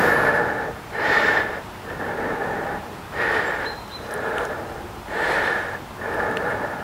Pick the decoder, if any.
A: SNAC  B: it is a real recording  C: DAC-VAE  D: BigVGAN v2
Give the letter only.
D